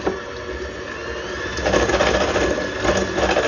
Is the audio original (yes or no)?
yes